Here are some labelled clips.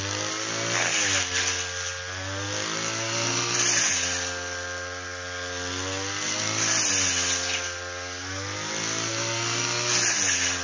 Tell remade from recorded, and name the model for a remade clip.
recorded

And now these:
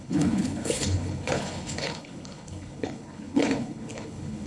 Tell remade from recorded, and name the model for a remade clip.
remade, codec, HILCodec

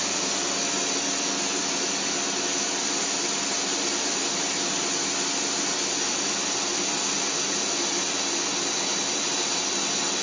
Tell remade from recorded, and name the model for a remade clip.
recorded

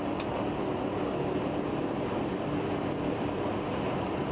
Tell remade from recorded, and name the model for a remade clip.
recorded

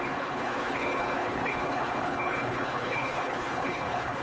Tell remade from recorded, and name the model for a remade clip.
remade, codec, HILCodec